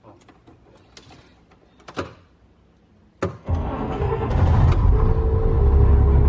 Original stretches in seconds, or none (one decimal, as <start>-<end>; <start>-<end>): 0.0-3.4; 4.3-6.3